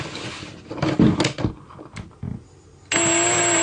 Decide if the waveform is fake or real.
real